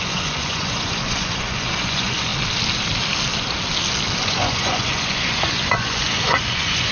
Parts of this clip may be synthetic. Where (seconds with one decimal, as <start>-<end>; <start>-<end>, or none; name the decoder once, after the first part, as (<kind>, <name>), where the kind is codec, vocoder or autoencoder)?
0.0-2.3 (vocoder, Vocos); 4.2-6.9